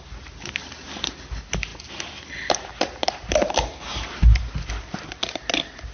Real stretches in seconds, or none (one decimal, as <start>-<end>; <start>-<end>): 0.0-5.9